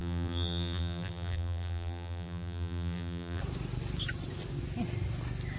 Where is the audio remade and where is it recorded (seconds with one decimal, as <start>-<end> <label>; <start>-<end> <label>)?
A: 0.0-3.4 remade; 3.4-5.6 recorded